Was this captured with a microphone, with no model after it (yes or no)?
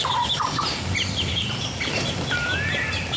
yes